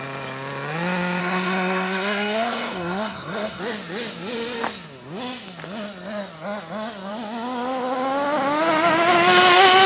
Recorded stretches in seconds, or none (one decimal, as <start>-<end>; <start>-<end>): 0.0-1.2; 3.6-9.9